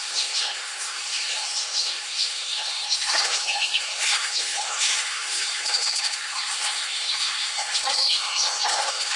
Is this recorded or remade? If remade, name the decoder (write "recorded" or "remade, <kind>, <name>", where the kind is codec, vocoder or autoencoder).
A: remade, codec, SNAC